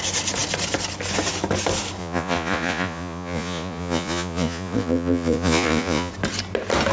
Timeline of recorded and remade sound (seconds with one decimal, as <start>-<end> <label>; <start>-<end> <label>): 0.0-2.0 recorded; 2.0-6.1 remade; 6.1-6.9 recorded

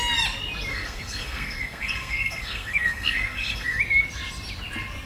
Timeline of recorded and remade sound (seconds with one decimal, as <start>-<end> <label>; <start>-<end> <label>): 0.0-0.7 recorded; 0.7-3.8 remade; 3.8-5.1 recorded

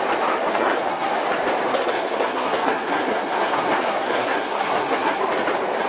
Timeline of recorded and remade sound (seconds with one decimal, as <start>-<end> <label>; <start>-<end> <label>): 0.0-0.5 recorded; 0.5-1.1 remade; 1.1-1.7 recorded; 1.7-5.2 remade; 5.2-5.9 recorded

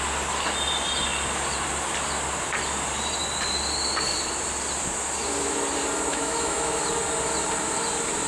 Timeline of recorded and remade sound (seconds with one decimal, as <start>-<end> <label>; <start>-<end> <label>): 0.0-6.1 recorded; 6.1-6.8 remade; 6.8-8.3 recorded

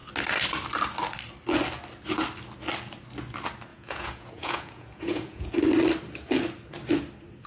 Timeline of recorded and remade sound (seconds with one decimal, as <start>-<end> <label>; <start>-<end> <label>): 0.0-3.7 recorded; 3.7-5.5 remade; 5.5-7.5 recorded

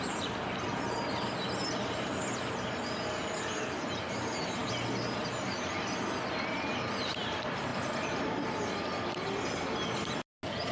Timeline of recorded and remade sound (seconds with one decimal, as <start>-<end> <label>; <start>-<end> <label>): 0.0-7.7 recorded; 7.7-8.5 remade; 8.5-10.7 recorded

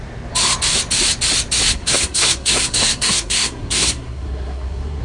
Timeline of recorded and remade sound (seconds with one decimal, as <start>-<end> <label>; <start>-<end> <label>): 0.0-1.7 recorded; 1.7-5.0 remade

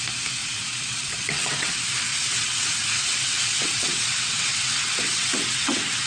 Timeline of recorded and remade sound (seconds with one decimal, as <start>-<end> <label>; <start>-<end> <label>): 0.0-0.4 recorded; 0.4-1.7 remade; 1.7-2.1 recorded; 2.1-6.1 remade